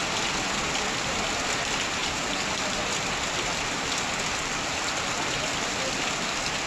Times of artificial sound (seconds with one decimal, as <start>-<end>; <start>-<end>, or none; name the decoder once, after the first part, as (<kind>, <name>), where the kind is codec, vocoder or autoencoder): none